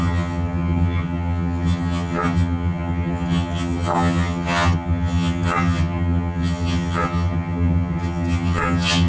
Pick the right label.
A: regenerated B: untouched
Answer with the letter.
A